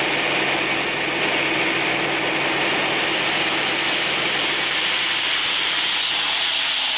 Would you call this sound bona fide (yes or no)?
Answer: yes